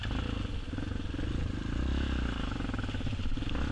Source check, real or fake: real